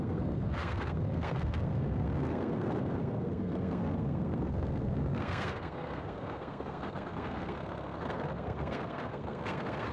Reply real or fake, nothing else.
fake